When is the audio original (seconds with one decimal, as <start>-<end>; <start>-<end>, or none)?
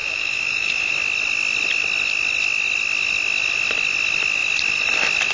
0.9-5.3